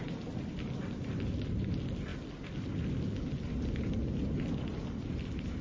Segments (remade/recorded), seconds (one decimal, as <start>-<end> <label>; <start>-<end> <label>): 0.0-5.6 recorded